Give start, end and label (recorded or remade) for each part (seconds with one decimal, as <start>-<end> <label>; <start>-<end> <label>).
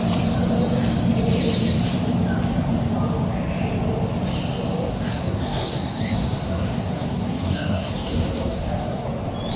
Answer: 0.0-4.9 recorded; 4.9-9.1 remade; 9.1-9.6 recorded